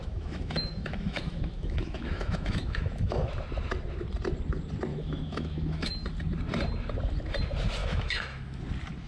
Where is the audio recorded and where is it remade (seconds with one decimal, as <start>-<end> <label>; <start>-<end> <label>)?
0.0-3.3 remade; 3.3-4.9 recorded; 4.9-5.9 remade; 5.9-7.8 recorded; 7.8-8.6 remade; 8.6-9.1 recorded